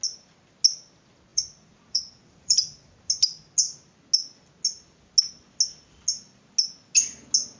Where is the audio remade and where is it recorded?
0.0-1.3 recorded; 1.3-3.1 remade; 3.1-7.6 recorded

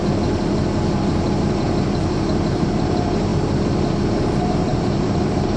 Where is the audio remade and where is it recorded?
0.0-2.5 recorded; 2.5-3.3 remade; 3.3-4.0 recorded; 4.0-5.6 remade

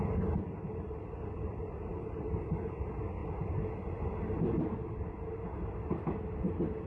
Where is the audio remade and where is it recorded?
0.0-3.2 recorded; 3.2-3.9 remade; 3.9-6.9 recorded